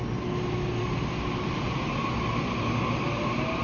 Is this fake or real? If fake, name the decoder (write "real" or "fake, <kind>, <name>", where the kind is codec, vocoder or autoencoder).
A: real